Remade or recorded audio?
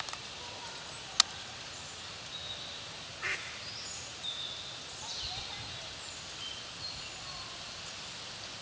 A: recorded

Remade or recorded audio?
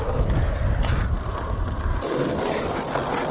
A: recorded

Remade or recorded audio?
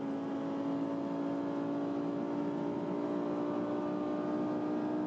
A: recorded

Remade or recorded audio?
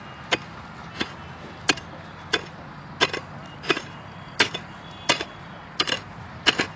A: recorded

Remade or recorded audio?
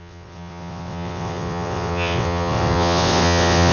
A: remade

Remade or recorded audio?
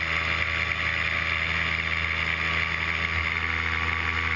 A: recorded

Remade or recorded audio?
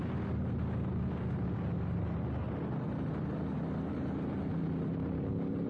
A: recorded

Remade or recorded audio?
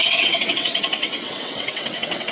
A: remade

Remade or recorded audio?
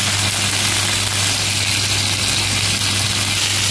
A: recorded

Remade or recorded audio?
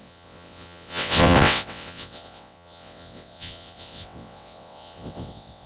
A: remade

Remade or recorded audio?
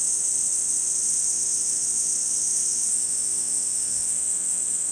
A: remade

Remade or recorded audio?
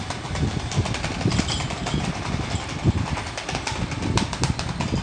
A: recorded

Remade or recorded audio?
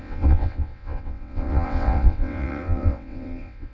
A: remade